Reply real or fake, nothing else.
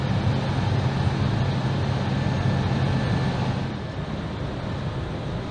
real